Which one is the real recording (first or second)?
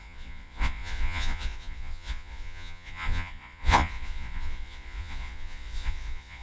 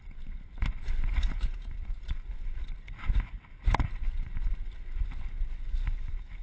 second